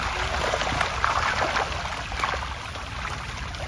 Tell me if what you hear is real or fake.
real